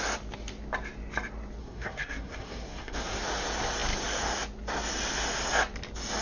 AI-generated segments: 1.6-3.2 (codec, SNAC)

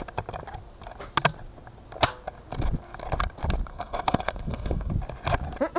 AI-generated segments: 3.7-4.9 (codec, SNAC)

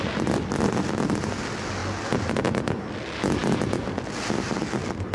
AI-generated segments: none

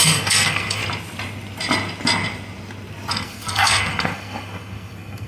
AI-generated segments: 0.0-0.8 (codec, SNAC); 3.1-5.3

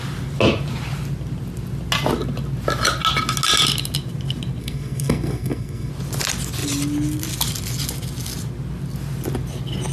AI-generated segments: 4.6-5.9 (codec, SNAC)

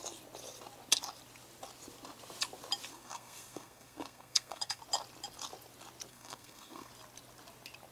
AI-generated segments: 2.9-4.8 (codec, SNAC); 6.1-6.9

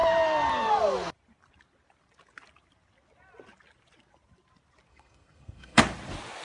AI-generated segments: 4.9-5.8 (codec, SNAC)

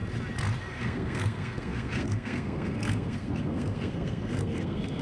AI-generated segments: 0.6-5.0 (codec, SNAC)